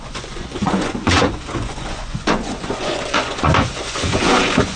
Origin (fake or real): fake